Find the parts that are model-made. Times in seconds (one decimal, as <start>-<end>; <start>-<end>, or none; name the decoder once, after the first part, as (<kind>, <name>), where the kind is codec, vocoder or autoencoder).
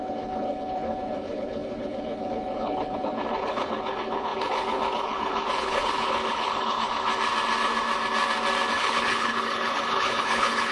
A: 0.0-7.1 (codec, HILCodec); 8.7-10.7